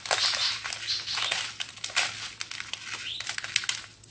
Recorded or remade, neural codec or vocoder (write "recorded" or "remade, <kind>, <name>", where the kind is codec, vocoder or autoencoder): recorded